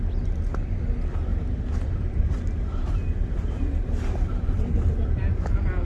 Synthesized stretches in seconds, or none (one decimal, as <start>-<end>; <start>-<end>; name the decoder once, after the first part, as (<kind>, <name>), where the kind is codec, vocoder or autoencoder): 1.3-4.8 (vocoder, BigVGAN v2)